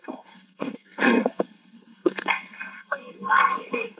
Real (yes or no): no